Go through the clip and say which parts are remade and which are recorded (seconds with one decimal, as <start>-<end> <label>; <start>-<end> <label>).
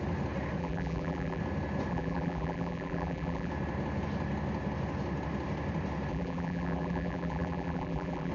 0.0-0.6 recorded; 0.6-1.4 remade; 1.4-1.9 recorded; 1.9-3.5 remade; 3.5-6.1 recorded; 6.1-8.3 remade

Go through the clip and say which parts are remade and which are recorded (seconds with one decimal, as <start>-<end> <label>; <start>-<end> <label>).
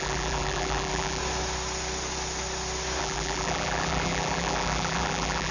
0.0-1.2 remade; 1.2-3.0 recorded; 3.0-5.5 remade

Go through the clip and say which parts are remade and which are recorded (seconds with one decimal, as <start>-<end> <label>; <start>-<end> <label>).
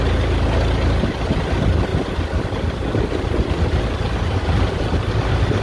0.0-5.6 recorded